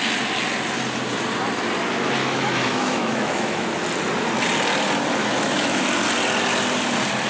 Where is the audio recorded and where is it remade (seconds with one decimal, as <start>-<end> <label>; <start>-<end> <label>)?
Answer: 0.0-2.2 recorded; 2.2-3.7 remade; 3.7-5.2 recorded; 5.2-5.8 remade; 5.8-7.3 recorded